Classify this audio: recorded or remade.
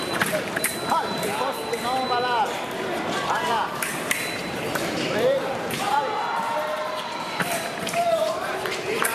remade